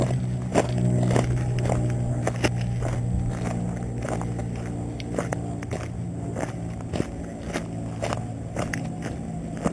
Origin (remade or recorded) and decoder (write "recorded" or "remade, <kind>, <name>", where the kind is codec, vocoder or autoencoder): recorded